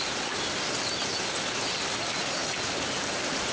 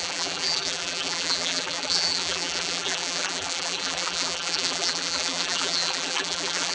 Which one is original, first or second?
first